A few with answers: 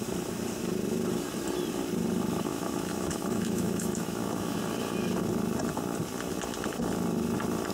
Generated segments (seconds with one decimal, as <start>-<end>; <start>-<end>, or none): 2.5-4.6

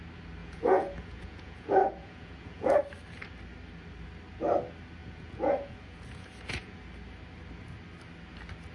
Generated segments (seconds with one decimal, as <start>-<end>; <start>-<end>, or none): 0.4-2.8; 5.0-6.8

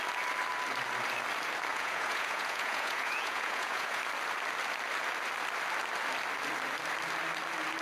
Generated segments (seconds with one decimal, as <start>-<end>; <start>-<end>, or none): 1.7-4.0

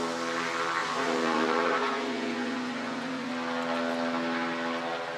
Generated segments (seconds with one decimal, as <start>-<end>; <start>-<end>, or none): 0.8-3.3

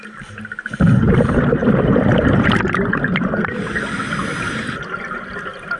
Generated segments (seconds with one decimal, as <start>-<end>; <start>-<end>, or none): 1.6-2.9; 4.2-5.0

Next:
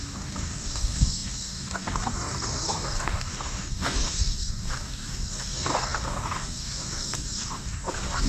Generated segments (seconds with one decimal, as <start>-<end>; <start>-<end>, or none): 0.0-8.3